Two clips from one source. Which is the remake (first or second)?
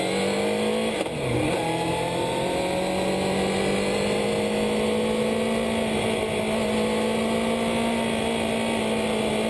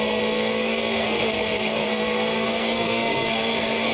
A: second